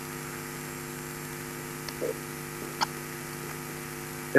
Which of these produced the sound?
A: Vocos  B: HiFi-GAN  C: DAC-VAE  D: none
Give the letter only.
D